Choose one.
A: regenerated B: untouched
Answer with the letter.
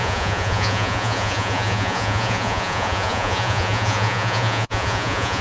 A